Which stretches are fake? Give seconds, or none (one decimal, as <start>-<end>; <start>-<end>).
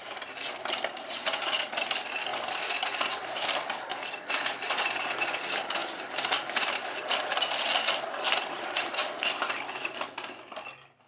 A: none